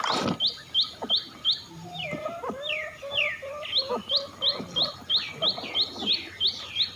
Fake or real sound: real